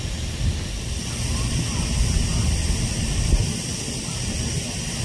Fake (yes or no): no